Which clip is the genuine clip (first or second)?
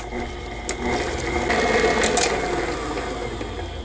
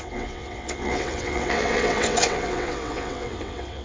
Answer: first